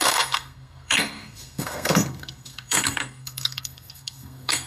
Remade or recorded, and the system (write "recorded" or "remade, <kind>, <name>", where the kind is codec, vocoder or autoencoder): remade, codec, SNAC